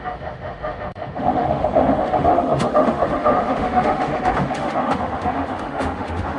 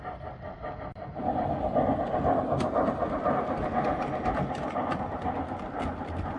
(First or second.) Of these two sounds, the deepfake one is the first